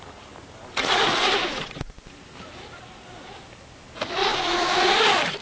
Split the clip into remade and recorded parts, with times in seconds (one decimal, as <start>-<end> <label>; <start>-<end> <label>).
0.0-0.8 recorded; 0.8-1.9 remade; 1.9-4.2 recorded; 4.2-5.0 remade; 5.0-5.4 recorded